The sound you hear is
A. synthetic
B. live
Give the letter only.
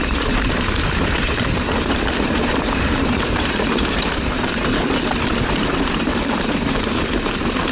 A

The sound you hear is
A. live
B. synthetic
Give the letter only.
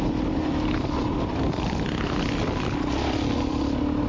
A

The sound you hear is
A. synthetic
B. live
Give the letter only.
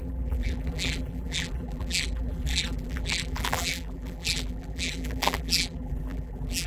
A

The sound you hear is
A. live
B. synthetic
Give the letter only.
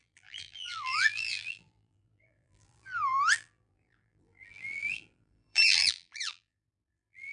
B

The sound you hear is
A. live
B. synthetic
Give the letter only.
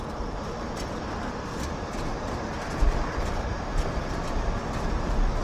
B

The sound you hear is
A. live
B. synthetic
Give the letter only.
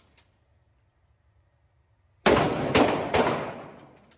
A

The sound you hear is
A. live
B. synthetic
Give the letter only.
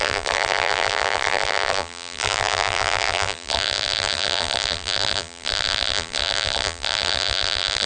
B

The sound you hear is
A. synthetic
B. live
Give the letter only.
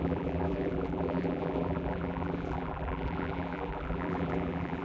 A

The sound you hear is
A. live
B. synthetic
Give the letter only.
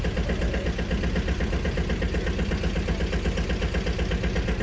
A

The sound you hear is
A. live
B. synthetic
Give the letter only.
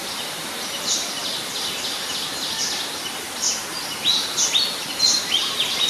A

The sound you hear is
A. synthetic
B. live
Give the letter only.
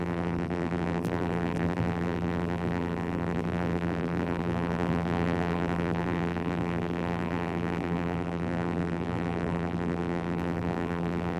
A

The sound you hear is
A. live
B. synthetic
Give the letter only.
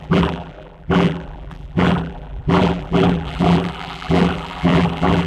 B